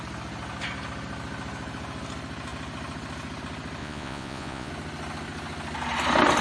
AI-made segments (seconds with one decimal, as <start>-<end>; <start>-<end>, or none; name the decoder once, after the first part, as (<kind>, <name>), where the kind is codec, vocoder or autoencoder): 3.8-4.7 (vocoder, Vocos)